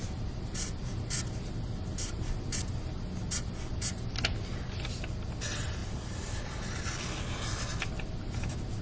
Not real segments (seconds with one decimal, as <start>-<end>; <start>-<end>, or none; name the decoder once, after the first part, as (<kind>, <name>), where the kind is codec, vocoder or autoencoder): none